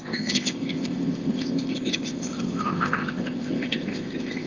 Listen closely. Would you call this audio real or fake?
fake